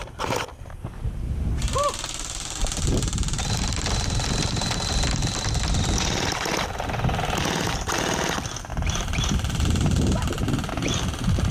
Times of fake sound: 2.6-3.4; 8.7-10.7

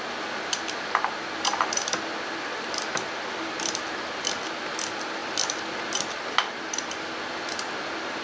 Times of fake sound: none

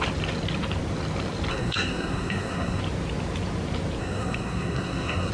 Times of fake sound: 1.5-2.8; 4.0-5.3

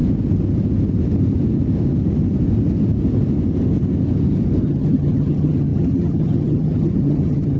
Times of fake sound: 4.6-7.6

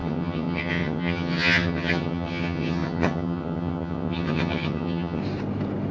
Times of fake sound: 0.0-5.2